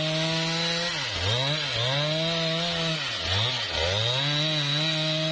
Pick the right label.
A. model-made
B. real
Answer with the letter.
B